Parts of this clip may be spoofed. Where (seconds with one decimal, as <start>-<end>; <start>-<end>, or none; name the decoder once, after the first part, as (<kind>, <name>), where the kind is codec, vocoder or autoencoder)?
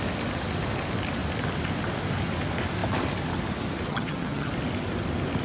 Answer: 3.9-4.5 (vocoder, HiFi-GAN)